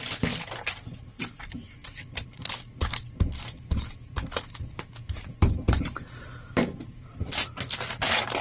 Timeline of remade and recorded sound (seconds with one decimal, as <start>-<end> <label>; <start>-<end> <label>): 0.0-1.8 recorded; 1.8-4.5 remade; 4.5-5.0 recorded; 5.0-7.2 remade; 7.2-8.4 recorded